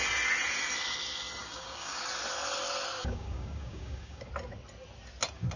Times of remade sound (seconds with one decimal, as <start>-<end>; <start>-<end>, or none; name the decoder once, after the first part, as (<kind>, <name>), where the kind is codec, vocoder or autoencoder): 1.4-2.0 (codec, DAC); 3.0-4.3